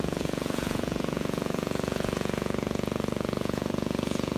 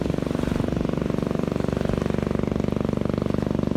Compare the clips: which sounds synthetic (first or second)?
first